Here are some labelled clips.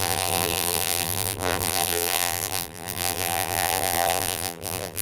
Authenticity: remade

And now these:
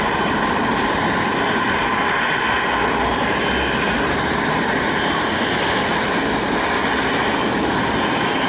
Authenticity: recorded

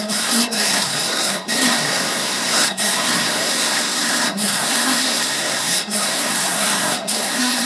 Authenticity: remade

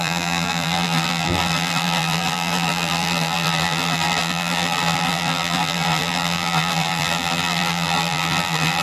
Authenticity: remade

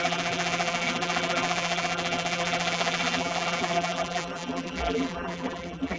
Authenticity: remade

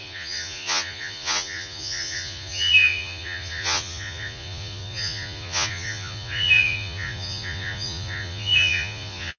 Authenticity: remade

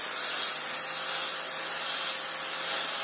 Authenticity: recorded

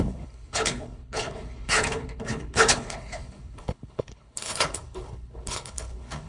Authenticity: remade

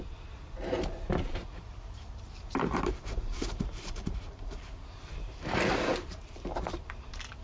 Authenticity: remade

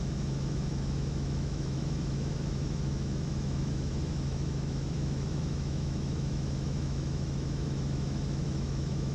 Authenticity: remade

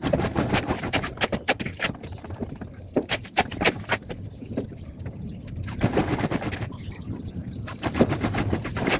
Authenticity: remade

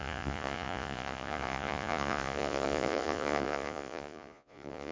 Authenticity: remade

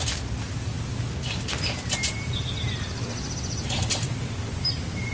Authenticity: recorded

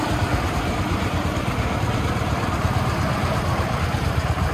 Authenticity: remade